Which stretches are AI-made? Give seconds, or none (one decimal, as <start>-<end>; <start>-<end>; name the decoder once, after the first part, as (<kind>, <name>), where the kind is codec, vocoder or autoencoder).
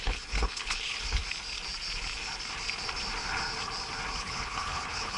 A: 0.0-1.2 (codec, HILCodec); 4.2-5.2